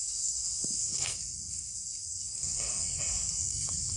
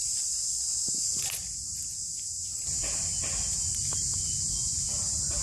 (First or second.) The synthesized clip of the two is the first